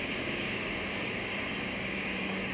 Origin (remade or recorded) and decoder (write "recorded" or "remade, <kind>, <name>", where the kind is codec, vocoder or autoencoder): remade, codec, DAC